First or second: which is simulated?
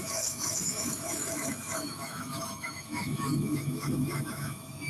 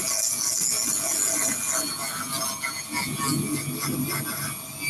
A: first